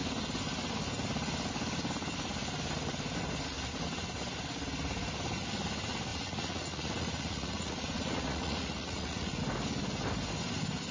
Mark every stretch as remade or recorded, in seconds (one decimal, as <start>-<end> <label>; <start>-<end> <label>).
0.0-6.1 recorded; 6.1-9.4 remade; 9.4-10.9 recorded